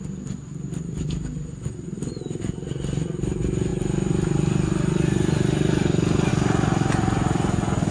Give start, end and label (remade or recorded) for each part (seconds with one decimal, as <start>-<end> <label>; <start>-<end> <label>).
0.0-7.9 recorded